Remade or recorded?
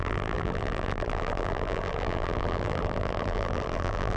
remade